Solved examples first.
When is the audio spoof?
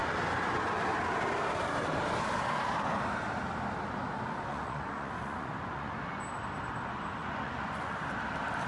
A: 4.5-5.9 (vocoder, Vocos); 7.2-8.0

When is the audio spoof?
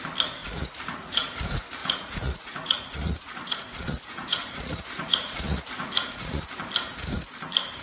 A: 0.4-1.3 (vocoder, Vocos); 1.8-6.5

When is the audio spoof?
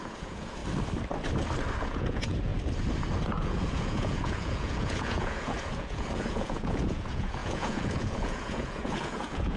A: 0.0-0.6 (vocoder, Vocos); 1.8-2.5; 3.3-9.6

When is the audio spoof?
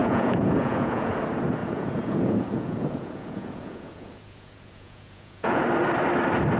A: 0.0-1.1 (vocoder, Vocos); 1.6-5.6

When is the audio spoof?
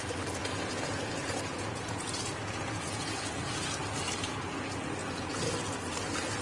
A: 0.4-3.8 (vocoder, Vocos); 5.0-5.5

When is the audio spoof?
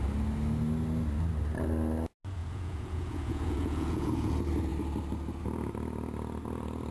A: 2.4-4.3 (vocoder, Vocos)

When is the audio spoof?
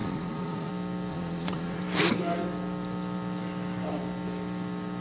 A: 0.0-0.7 (vocoder, Vocos); 1.1-1.8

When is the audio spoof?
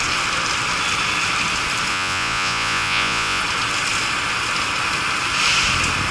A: 1.9-3.4 (vocoder, Vocos)